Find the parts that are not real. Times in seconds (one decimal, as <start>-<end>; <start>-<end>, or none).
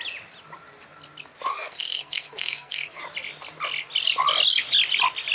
1.5-3.0